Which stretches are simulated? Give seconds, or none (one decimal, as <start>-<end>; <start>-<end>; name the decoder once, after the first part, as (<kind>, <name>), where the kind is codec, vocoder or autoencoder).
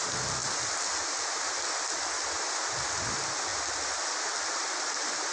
none